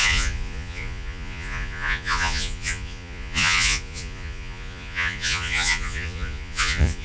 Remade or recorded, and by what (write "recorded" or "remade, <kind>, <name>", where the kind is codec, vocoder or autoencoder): remade, vocoder, Vocos